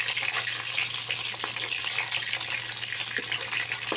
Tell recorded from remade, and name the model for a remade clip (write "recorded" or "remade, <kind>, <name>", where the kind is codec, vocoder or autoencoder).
recorded